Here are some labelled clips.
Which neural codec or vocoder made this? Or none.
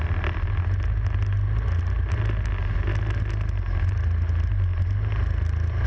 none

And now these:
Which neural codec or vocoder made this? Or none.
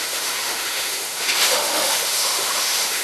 autoencoder, DAC-VAE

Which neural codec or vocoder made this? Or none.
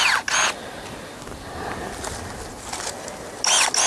none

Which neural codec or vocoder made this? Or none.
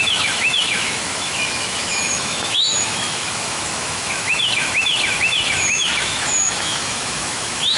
autoencoder, DAC-VAE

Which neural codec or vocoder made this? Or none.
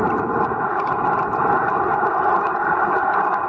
vocoder, BigVGAN v2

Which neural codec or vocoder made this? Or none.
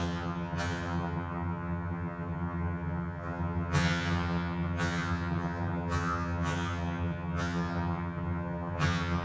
vocoder, HiFi-GAN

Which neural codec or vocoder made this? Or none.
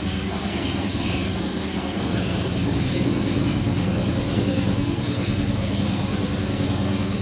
codec, SNAC